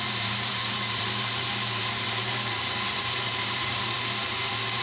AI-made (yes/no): yes